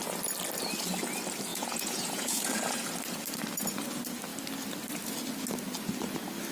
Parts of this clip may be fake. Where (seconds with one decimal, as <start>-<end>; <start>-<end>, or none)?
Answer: 1.5-2.5